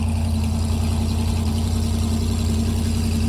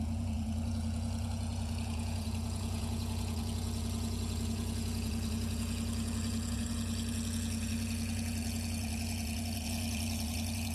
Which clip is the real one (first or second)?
first